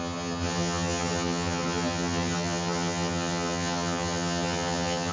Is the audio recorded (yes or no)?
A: no